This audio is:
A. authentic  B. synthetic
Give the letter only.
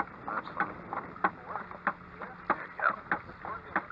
A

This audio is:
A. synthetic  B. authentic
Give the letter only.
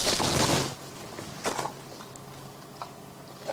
B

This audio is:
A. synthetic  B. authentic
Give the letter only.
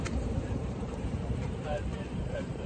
A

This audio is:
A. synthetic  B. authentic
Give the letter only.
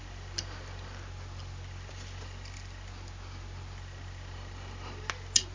B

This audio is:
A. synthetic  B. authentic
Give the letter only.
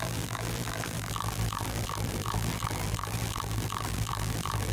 A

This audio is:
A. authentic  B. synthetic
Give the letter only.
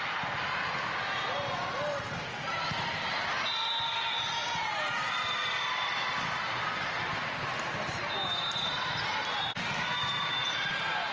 A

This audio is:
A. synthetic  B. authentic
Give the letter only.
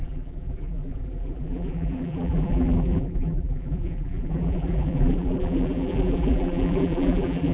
A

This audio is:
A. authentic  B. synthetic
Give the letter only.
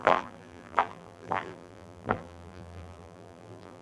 B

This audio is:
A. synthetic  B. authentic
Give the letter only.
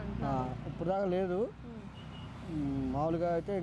B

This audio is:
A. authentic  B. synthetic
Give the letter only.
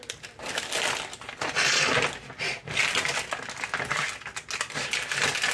A